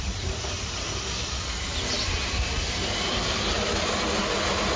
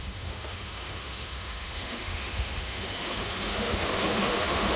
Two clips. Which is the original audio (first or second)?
first